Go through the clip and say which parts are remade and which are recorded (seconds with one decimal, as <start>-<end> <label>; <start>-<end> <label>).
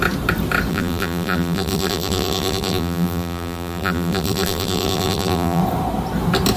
0.0-0.7 recorded; 0.7-5.6 remade; 5.6-6.6 recorded